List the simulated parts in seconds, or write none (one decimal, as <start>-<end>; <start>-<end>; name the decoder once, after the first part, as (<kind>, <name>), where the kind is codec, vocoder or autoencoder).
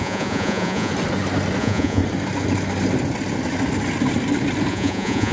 0.0-0.9 (vocoder, Vocos); 1.6-2.0; 4.7-5.3